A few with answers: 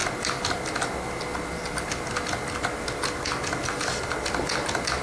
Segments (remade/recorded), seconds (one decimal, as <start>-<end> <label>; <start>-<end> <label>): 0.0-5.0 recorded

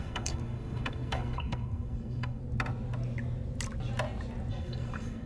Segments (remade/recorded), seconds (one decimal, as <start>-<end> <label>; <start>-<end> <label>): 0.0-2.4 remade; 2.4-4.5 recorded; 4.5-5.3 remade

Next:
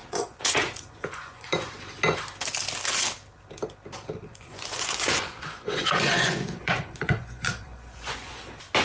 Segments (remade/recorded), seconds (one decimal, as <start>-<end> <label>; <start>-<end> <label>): 0.0-1.7 remade; 1.7-4.3 recorded; 4.3-8.4 remade; 8.4-8.8 recorded

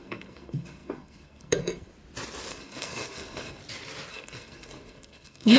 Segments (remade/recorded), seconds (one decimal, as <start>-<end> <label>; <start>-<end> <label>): 0.0-1.9 remade; 1.9-2.5 recorded; 2.5-3.6 remade; 3.6-4.1 recorded; 4.1-5.6 remade

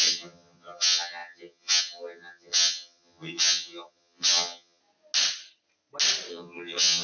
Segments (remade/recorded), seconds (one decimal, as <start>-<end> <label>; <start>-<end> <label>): 0.0-4.8 remade; 4.8-6.3 recorded; 6.3-7.0 remade

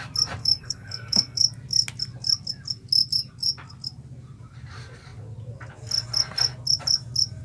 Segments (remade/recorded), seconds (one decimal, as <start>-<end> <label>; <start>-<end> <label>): 0.0-0.4 recorded; 0.4-1.4 remade; 1.4-7.4 recorded

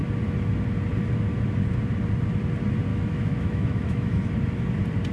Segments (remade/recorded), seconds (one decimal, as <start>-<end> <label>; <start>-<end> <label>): 0.0-2.9 recorded; 2.9-4.2 remade; 4.2-5.1 recorded